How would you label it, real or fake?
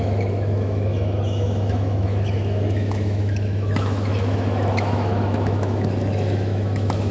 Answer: fake